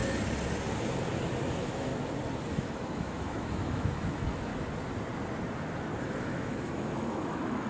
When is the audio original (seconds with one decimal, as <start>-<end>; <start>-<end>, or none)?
0.0-1.5; 1.9-2.5; 4.5-6.0